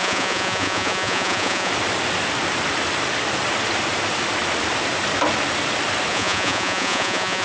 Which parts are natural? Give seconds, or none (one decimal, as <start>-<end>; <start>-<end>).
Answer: 1.7-6.1